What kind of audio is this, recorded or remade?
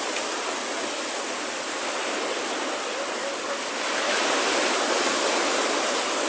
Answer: recorded